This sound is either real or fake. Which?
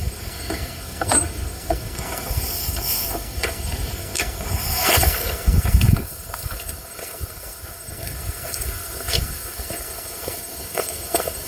fake